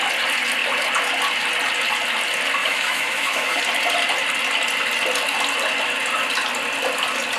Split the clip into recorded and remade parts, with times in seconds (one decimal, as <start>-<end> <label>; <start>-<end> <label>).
0.0-2.6 recorded; 2.6-3.6 remade; 3.6-7.4 recorded